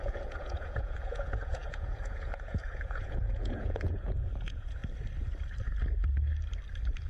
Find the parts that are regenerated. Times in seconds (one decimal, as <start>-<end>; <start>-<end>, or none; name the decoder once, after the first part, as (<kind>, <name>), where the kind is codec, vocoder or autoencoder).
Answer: 0.0-4.8 (vocoder, Vocos)